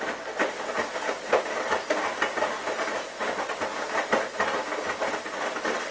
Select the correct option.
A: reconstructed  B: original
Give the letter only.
B